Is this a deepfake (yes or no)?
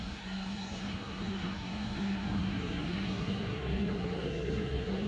yes